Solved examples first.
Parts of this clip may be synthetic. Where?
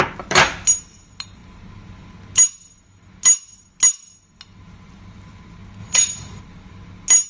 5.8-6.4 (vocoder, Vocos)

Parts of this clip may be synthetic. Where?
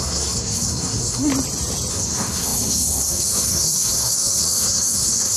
0.0-1.3 (codec, SNAC); 1.9-5.4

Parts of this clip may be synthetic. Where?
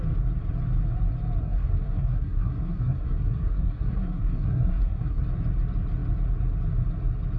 1.4-5.2 (codec, SNAC)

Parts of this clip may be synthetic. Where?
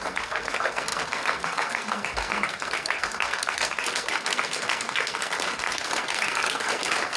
0.0-7.2 (codec, SNAC)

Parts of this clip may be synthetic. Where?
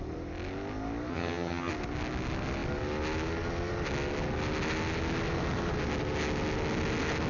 1.1-1.7 (vocoder, HiFi-GAN)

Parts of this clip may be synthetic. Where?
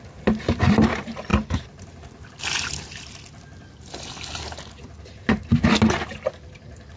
none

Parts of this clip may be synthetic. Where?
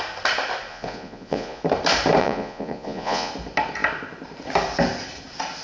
0.7-1.6 (vocoder, Vocos); 2.2-3.3